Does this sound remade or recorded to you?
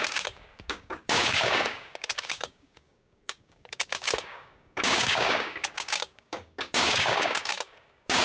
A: remade